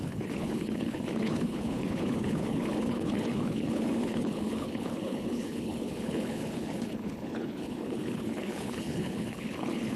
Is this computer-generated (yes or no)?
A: yes